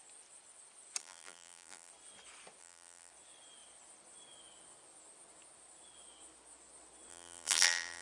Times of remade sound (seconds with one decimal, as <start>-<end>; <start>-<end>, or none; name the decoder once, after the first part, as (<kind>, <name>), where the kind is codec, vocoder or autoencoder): 1.0-1.9 (vocoder, BigVGAN v2); 2.6-3.1; 7.1-8.0